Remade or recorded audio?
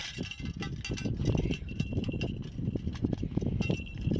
recorded